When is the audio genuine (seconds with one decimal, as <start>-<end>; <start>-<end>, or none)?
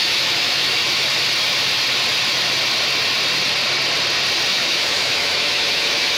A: 0.8-4.5